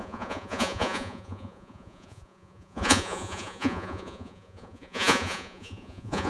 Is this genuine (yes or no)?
no